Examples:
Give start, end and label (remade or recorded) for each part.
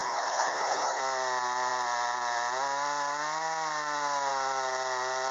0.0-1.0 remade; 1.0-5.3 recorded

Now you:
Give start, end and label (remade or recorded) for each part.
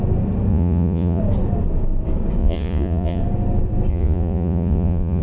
0.0-0.5 recorded; 0.5-1.2 remade; 1.2-2.4 recorded; 2.4-3.2 remade; 3.2-3.9 recorded; 3.9-5.2 remade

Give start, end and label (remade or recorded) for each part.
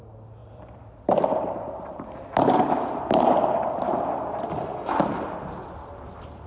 0.0-0.4 recorded; 0.4-3.3 remade; 3.3-6.5 recorded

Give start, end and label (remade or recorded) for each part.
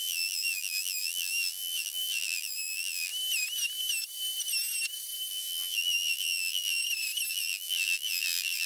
0.0-3.1 remade; 3.1-5.3 recorded; 5.3-6.8 remade; 6.8-7.3 recorded; 7.3-8.7 remade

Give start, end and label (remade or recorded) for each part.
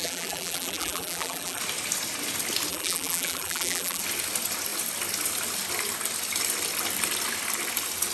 0.0-1.6 remade; 1.6-2.7 recorded; 2.7-4.0 remade; 4.0-8.1 recorded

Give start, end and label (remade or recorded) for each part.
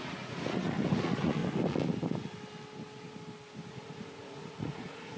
0.0-1.4 remade; 1.4-3.7 recorded; 3.7-5.2 remade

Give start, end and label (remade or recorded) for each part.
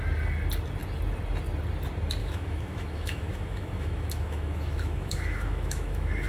0.0-2.2 recorded; 2.2-6.3 remade